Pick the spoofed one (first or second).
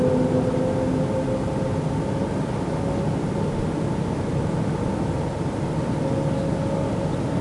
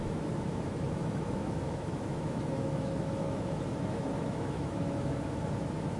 second